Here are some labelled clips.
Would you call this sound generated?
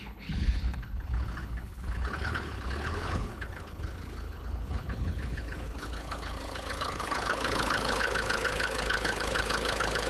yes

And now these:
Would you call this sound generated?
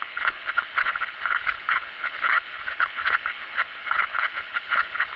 yes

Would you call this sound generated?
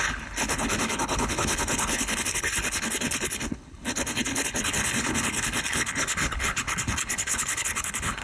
yes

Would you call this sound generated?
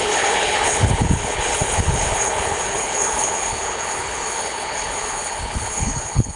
yes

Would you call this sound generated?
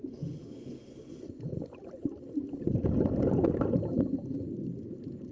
no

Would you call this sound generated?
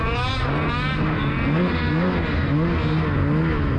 no